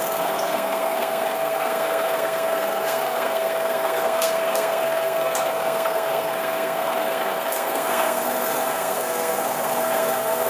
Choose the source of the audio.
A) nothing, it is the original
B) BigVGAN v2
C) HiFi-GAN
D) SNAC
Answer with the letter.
D